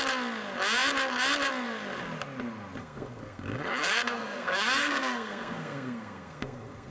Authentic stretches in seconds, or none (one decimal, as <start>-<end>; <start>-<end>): 0.0-2.8